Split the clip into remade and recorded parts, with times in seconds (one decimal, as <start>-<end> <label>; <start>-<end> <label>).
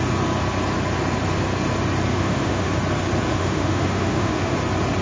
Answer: 0.0-2.1 recorded; 2.1-2.7 remade; 2.7-3.3 recorded; 3.3-4.6 remade; 4.6-5.0 recorded